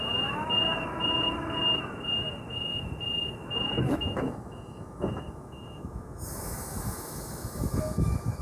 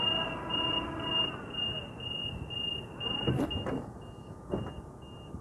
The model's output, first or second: first